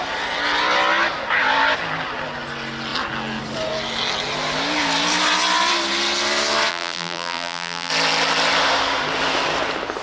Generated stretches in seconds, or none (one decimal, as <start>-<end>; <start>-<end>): 6.7-7.9